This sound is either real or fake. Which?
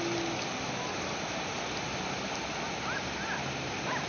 real